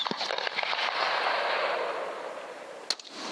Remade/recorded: recorded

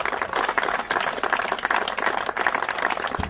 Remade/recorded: recorded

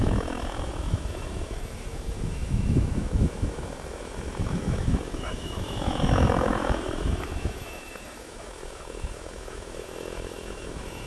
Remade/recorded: remade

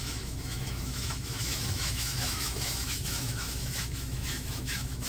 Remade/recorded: remade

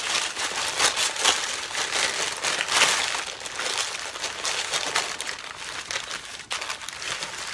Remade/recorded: recorded